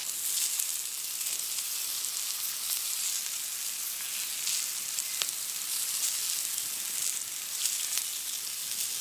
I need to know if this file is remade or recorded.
recorded